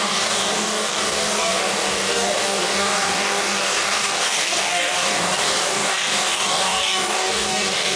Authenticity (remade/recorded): remade